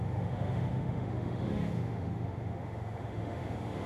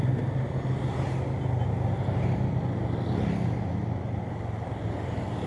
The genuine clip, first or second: second